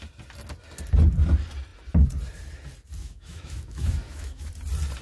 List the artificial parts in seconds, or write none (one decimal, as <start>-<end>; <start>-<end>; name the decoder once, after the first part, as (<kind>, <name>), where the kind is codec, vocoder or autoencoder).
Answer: 3.0-4.5 (autoencoder, DAC-VAE)